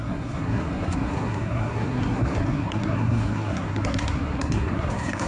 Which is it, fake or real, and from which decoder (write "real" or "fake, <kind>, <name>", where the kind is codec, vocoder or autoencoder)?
fake, codec, SNAC